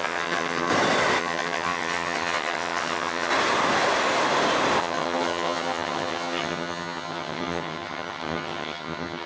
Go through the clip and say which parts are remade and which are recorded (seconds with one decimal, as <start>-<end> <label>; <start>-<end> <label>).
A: 0.0-0.7 remade; 0.7-1.2 recorded; 1.2-3.3 remade; 3.3-4.8 recorded; 4.8-9.3 remade